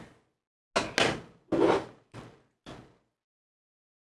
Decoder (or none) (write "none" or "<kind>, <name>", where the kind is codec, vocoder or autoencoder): none